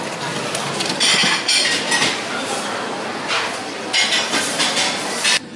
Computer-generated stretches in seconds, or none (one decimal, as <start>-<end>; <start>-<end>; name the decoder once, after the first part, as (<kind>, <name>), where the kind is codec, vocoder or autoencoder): none